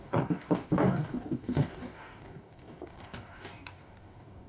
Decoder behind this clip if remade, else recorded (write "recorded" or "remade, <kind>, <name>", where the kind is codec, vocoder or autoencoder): remade, codec, DAC